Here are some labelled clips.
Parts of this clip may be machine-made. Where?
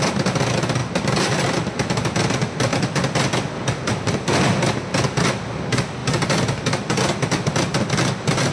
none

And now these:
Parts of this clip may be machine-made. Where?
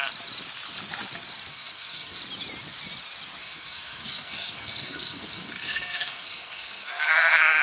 1.5-2.2; 3.4-7.6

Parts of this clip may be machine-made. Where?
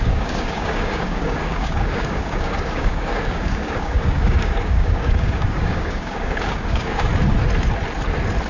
0.0-7.1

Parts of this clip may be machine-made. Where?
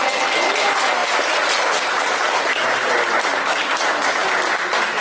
none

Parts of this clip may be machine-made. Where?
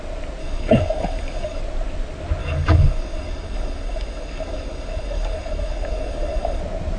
0.4-1.6; 2.4-6.6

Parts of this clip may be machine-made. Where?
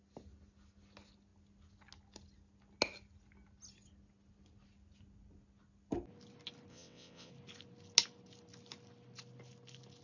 6.7-7.3